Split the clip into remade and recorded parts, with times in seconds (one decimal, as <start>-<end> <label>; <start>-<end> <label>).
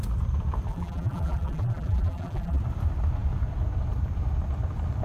0.0-0.7 recorded; 0.7-2.6 remade; 2.6-5.0 recorded